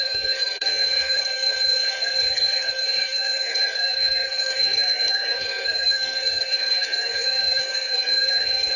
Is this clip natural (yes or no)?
no